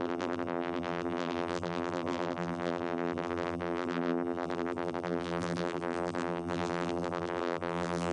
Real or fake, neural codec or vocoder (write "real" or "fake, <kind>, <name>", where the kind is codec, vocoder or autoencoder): fake, vocoder, BigVGAN v2